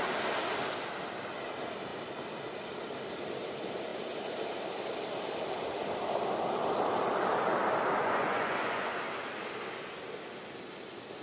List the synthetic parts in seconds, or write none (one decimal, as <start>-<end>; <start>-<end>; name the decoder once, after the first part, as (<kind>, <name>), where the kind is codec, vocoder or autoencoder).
8.0-9.0 (vocoder, Vocos)